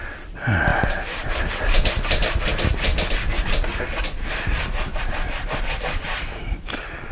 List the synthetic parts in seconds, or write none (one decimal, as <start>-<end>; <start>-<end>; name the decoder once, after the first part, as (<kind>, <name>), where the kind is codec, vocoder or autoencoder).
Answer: none